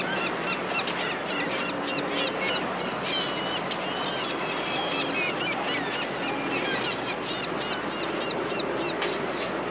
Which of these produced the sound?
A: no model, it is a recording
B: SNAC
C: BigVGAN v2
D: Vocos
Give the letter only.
A